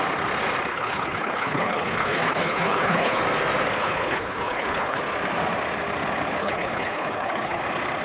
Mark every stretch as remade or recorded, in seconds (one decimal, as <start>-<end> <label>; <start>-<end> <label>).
0.0-0.7 recorded; 0.7-3.2 remade; 3.2-3.8 recorded; 3.8-5.0 remade; 5.0-6.4 recorded; 6.4-7.6 remade; 7.6-8.0 recorded